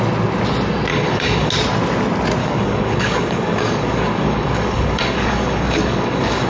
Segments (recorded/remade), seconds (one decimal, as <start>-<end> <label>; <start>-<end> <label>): 0.0-0.9 recorded; 0.9-1.5 remade; 1.5-2.4 recorded; 2.4-6.5 remade